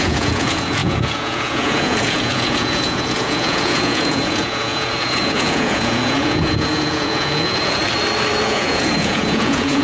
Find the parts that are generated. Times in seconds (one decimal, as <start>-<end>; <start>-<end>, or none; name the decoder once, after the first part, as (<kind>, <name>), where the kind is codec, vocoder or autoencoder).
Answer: 0.0-7.8 (vocoder, Vocos); 8.4-9.8

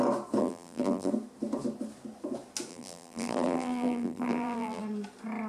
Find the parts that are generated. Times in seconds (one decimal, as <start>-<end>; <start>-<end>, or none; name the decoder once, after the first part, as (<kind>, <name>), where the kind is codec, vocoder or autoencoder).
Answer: 0.4-1.1 (vocoder, BigVGAN v2); 2.7-4.8

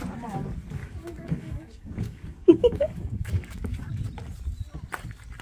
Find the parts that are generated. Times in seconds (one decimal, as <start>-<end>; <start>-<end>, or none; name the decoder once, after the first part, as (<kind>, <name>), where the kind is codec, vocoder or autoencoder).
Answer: 0.8-4.0 (codec, DAC)